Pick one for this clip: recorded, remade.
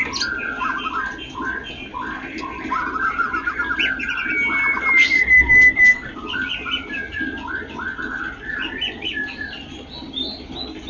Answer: recorded